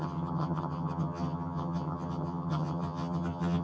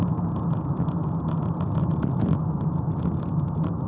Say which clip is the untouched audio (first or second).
second